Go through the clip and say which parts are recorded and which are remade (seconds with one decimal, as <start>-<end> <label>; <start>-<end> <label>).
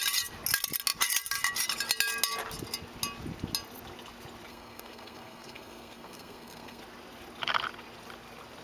0.0-4.5 recorded; 4.5-6.8 remade; 6.8-8.6 recorded